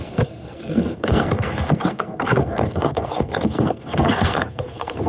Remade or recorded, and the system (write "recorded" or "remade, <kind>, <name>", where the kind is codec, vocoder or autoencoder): remade, codec, SNAC